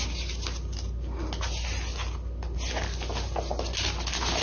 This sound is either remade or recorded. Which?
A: recorded